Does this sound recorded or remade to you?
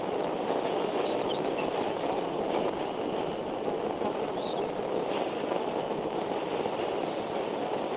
recorded